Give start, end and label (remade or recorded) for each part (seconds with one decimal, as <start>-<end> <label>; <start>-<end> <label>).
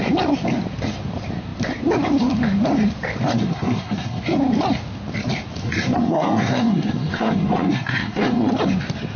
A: 0.0-3.3 recorded; 3.3-4.2 remade; 4.2-5.6 recorded; 5.6-8.5 remade; 8.5-9.2 recorded